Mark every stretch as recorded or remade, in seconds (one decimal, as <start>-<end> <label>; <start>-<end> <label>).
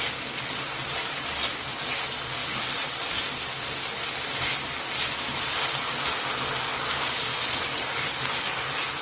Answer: 0.0-9.0 recorded